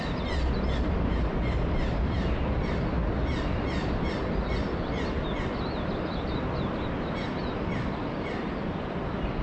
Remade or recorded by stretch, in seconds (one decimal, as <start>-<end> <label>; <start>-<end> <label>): 0.0-9.4 recorded